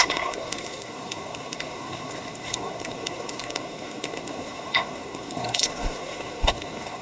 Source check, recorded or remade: remade